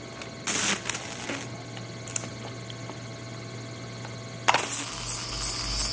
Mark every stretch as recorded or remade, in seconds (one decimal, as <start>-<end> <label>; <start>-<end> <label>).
0.0-5.9 recorded